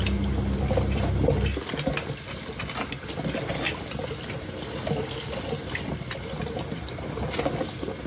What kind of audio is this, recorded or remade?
recorded